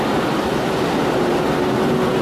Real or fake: fake